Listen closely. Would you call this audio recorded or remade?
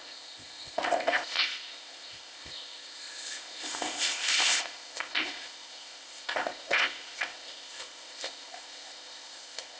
remade